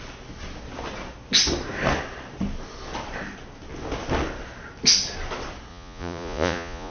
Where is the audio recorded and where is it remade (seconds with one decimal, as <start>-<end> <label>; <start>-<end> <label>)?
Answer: 0.0-5.7 recorded; 5.7-6.9 remade